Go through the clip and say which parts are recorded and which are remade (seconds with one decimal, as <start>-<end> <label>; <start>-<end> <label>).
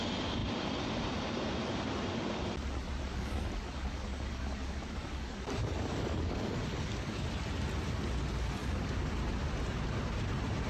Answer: 0.0-3.1 recorded; 3.1-7.3 remade; 7.3-8.6 recorded; 8.6-9.1 remade; 9.1-10.7 recorded